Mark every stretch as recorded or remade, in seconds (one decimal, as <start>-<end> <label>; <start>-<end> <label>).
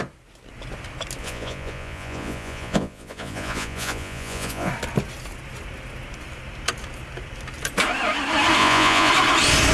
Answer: 0.0-1.2 recorded; 1.2-4.7 remade; 4.7-8.6 recorded; 8.6-9.1 remade; 9.1-9.7 recorded